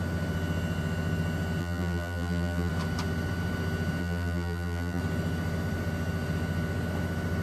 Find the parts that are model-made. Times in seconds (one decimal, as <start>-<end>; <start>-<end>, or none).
1.6-2.7; 4.0-5.0